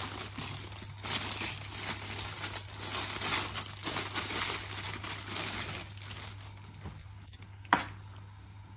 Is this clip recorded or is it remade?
recorded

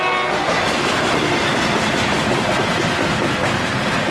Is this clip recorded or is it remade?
recorded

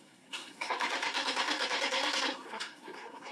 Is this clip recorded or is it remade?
remade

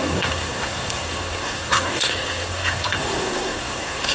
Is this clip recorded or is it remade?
remade